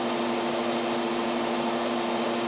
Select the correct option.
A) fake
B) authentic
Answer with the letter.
B